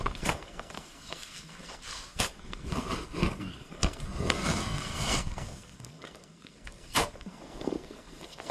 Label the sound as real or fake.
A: fake